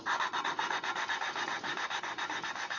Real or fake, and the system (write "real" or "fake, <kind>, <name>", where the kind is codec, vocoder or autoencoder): fake, vocoder, Vocos